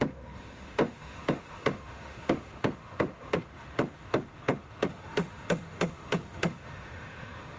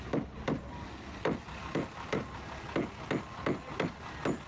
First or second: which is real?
second